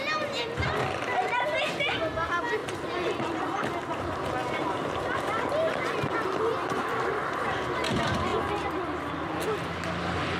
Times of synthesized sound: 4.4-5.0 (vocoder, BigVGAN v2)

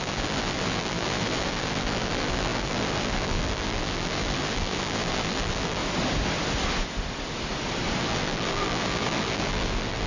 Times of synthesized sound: 0.0-5.8 (vocoder, BigVGAN v2); 8.0-10.1

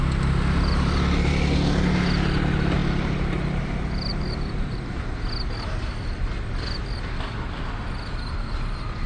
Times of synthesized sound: none

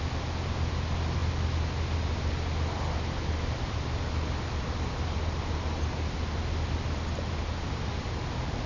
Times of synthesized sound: none